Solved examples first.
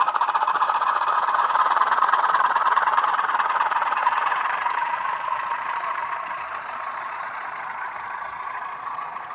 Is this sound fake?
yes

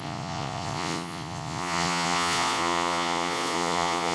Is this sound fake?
yes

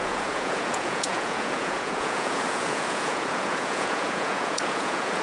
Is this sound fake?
yes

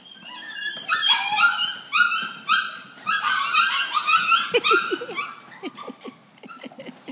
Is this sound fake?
no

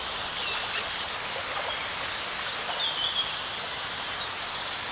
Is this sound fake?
no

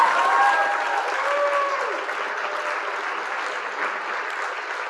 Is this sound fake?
no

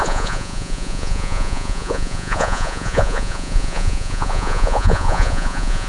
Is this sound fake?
yes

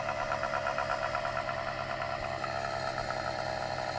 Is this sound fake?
no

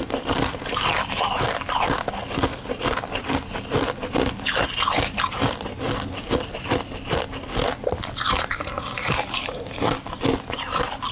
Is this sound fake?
no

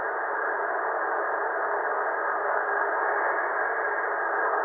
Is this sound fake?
no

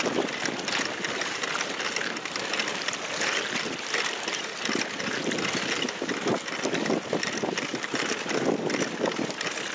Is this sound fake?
no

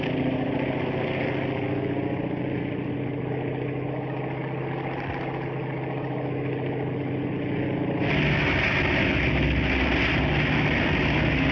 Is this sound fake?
no